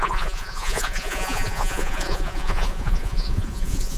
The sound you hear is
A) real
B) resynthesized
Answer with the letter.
B